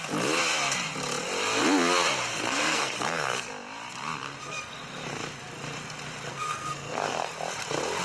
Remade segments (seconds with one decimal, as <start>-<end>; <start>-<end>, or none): 2.3-3.5; 6.3-7.3